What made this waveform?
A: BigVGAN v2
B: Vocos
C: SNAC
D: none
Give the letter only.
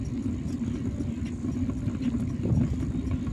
D